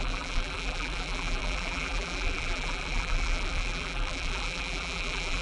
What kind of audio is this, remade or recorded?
remade